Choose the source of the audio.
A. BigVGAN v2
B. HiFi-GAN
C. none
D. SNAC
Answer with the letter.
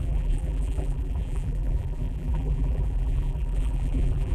A